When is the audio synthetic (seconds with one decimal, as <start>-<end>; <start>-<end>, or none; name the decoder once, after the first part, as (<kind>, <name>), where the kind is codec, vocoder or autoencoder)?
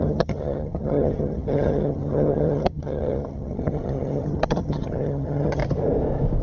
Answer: 0.0-5.6 (vocoder, HiFi-GAN)